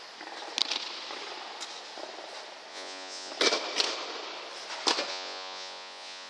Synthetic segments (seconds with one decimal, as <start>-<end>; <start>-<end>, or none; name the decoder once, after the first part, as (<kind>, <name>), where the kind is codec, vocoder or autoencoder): 2.7-3.3 (vocoder, Vocos); 5.1-6.3